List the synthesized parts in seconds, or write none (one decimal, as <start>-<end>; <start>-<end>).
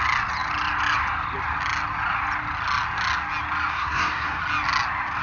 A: 3.7-4.4